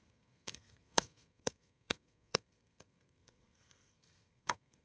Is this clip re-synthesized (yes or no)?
yes